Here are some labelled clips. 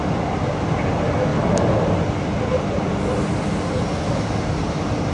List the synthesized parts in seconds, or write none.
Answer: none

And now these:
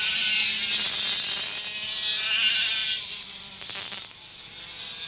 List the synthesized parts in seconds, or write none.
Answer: 2.8-4.4 (vocoder, BigVGAN v2)

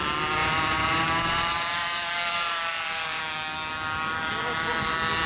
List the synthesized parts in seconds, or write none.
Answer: 0.4-3.2 (vocoder, BigVGAN v2)

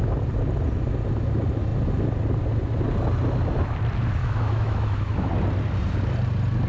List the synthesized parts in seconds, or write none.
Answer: 4.2-5.3 (autoencoder, DAC-VAE)

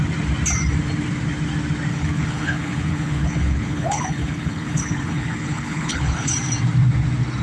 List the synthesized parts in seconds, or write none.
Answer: 1.9-6.3 (codec, HILCodec)

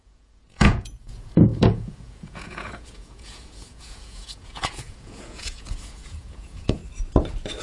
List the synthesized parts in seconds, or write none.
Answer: 0.0-6.8 (vocoder, Vocos)